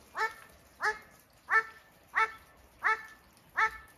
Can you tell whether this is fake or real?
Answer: real